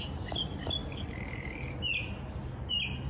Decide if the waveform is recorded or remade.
recorded